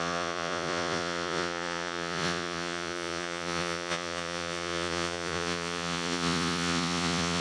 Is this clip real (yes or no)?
no